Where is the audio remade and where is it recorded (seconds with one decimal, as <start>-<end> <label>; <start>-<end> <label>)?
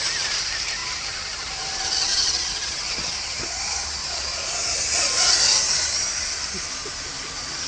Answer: 0.0-2.1 recorded; 2.1-2.8 remade; 2.8-4.0 recorded; 4.0-4.5 remade; 4.5-7.7 recorded